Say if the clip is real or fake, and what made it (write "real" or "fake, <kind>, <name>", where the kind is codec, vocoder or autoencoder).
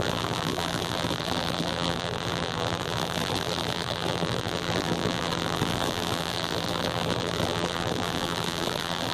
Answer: fake, vocoder, BigVGAN v2